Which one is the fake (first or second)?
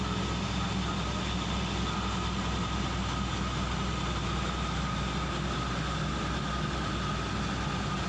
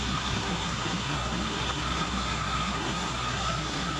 second